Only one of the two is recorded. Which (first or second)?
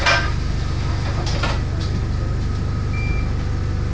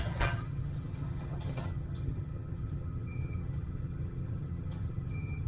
first